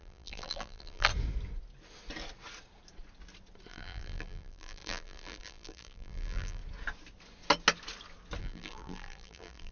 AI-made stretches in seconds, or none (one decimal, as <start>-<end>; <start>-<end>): 0.0-1.1; 3.7-6.6; 8.4-9.7